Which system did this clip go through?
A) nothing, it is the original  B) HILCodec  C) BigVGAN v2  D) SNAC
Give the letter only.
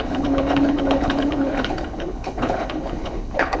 B